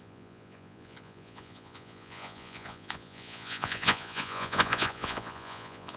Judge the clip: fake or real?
fake